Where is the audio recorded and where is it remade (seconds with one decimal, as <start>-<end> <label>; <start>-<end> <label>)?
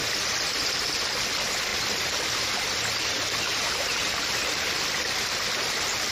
0.0-1.7 recorded; 1.7-2.6 remade; 2.6-3.5 recorded; 3.5-4.6 remade; 4.6-6.1 recorded